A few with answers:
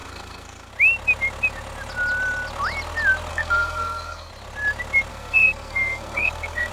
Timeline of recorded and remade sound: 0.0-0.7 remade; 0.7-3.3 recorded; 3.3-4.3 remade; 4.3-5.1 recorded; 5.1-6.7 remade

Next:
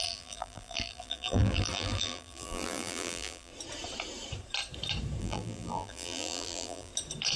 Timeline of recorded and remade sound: 0.0-3.5 remade; 3.5-5.2 recorded; 5.2-6.9 remade; 6.9-7.4 recorded